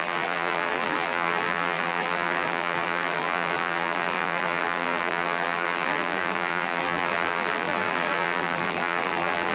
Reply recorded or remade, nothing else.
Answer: remade